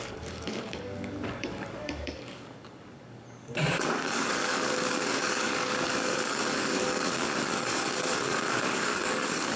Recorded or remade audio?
remade